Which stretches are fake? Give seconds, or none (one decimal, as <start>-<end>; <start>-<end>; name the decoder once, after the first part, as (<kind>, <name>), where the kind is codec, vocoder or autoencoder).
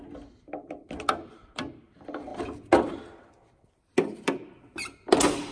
none